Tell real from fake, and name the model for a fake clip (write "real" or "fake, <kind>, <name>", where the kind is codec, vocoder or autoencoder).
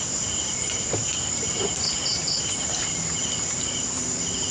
fake, vocoder, BigVGAN v2